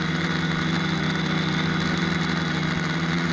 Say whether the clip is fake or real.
real